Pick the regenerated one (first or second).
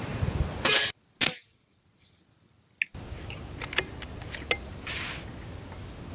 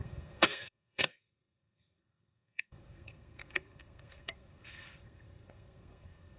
second